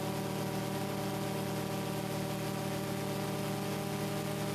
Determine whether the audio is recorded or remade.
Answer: recorded